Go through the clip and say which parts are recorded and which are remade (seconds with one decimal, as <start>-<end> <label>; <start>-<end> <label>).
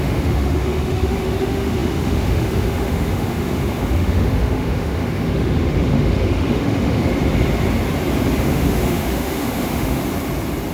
0.0-7.1 remade; 7.1-8.4 recorded; 8.4-10.0 remade; 10.0-10.7 recorded